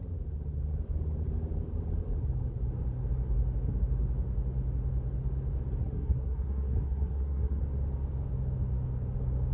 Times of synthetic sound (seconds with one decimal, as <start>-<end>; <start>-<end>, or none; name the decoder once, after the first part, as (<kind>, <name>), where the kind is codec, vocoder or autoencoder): 5.8-7.6 (codec, SNAC)